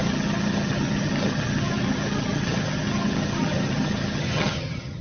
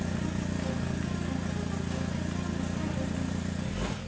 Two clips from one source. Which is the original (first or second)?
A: second